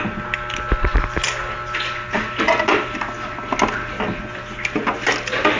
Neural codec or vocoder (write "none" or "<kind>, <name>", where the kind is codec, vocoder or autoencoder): none